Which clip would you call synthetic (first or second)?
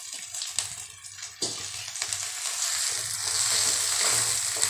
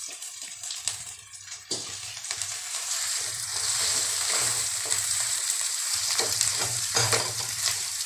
second